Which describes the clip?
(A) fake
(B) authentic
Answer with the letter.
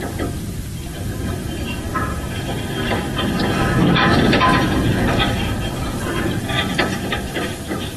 B